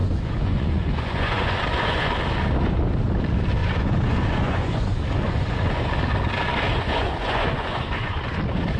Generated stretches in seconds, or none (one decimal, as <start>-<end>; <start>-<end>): 0.0-2.1; 3.6-5.9; 6.7-8.4